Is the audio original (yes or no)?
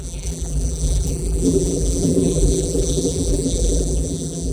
no